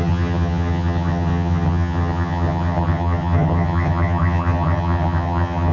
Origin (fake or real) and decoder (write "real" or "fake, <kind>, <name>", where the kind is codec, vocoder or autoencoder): fake, vocoder, HiFi-GAN